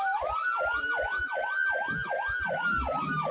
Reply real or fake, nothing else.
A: real